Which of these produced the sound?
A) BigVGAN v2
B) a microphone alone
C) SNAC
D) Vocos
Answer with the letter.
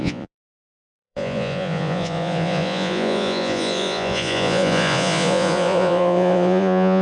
D